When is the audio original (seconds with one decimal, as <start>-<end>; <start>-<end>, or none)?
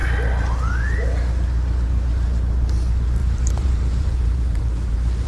0.0-3.2